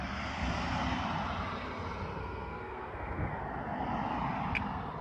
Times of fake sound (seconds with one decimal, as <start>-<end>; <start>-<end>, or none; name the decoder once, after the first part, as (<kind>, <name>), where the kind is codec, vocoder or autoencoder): 2.2-3.4 (codec, SNAC)